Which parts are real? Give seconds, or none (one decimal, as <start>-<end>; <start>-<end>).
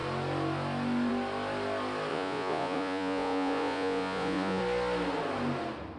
0.0-2.1; 4.6-6.0